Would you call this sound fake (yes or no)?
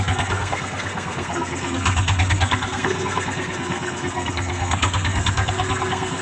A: yes